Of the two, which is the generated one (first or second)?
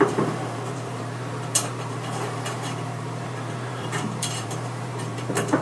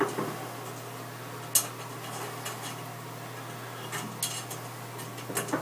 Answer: first